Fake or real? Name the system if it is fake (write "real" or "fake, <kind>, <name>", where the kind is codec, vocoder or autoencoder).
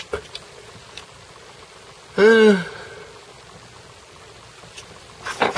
real